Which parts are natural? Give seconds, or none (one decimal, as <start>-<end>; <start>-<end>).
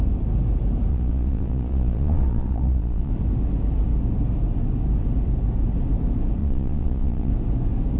0.0-0.9; 3.1-6.4; 7.3-8.0